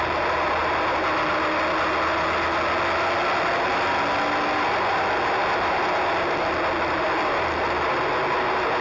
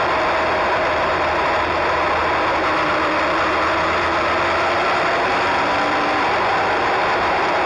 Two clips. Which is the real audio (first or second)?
first